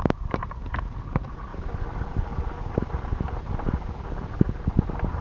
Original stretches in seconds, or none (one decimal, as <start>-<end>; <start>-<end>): 0.0-5.2